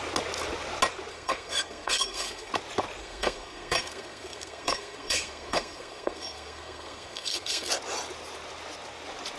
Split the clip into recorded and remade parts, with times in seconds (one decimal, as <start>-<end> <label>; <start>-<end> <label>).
0.0-1.1 recorded; 1.1-2.5 remade; 2.5-3.0 recorded; 3.0-7.7 remade; 7.7-9.4 recorded